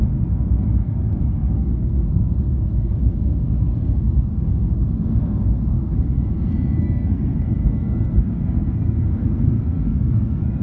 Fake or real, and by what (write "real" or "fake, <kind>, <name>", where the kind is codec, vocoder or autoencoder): fake, codec, SNAC